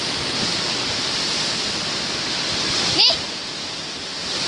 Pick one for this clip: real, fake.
real